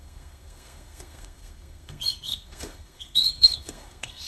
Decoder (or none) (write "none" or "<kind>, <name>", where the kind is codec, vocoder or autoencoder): codec, SNAC